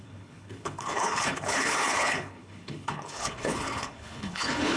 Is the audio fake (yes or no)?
yes